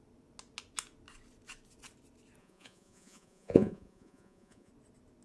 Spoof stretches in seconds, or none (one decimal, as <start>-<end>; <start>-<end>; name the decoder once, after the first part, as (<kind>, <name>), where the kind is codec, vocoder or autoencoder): 2.4-4.7 (vocoder, Vocos)